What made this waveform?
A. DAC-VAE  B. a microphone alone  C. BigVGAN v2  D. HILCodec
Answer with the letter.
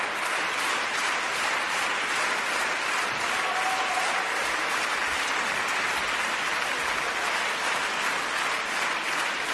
B